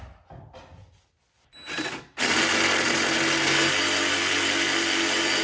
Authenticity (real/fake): real